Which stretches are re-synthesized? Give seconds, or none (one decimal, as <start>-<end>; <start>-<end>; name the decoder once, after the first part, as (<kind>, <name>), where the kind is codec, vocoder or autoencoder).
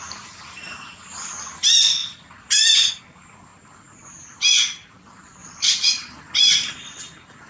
none